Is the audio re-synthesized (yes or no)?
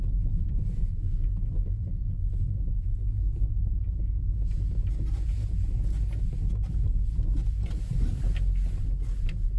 no